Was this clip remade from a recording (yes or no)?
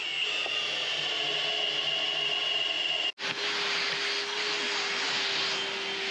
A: no